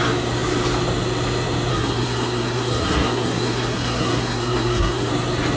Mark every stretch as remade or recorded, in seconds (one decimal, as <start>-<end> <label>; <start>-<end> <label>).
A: 0.0-1.7 recorded; 1.7-5.1 remade; 5.1-5.6 recorded